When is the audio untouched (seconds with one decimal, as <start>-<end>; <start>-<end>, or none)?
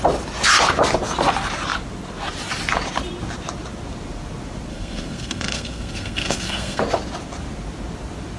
0.0-4.7; 6.8-8.4